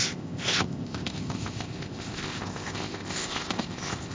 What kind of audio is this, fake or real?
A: fake